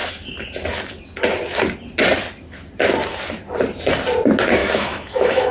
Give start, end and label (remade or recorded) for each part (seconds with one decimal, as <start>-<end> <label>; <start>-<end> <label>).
0.0-4.6 recorded; 4.6-5.5 remade